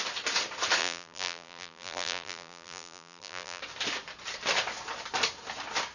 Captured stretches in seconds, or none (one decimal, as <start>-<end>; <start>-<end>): 0.0-0.8; 3.6-5.9